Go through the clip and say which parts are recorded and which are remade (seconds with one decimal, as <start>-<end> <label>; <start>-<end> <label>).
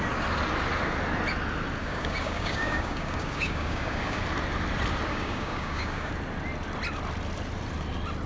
0.0-1.8 recorded; 1.8-4.2 remade; 4.2-5.1 recorded; 5.1-6.1 remade; 6.1-8.3 recorded